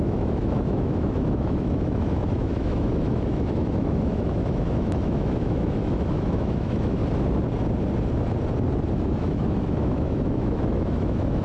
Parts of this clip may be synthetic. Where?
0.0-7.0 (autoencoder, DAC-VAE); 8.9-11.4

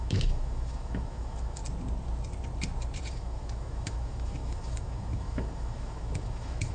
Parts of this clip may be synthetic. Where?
0.0-1.6 (autoencoder, DAC-VAE); 3.1-6.7

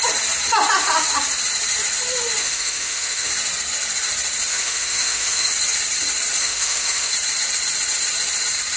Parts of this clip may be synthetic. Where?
2.4-3.3 (autoencoder, DAC-VAE); 4.5-5.5; 6.4-7.1

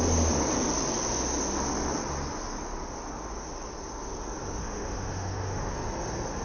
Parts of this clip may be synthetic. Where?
4.6-5.7 (autoencoder, DAC-VAE)

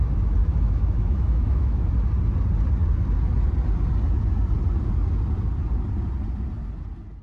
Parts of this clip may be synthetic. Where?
0.4-1.9 (autoencoder, DAC-VAE)

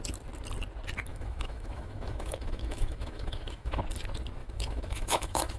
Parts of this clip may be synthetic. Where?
1.1-3.8 (autoencoder, DAC-VAE); 4.4-5.6

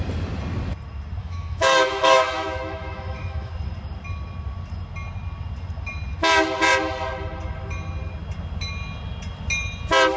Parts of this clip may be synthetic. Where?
1.2-3.5 (autoencoder, DAC-VAE)

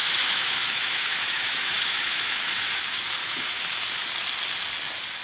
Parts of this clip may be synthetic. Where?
0.0-2.8 (autoencoder, DAC-VAE); 3.2-3.8